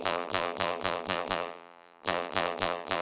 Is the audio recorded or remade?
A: remade